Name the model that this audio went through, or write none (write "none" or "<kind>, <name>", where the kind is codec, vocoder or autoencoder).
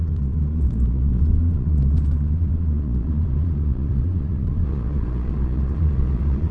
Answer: vocoder, Vocos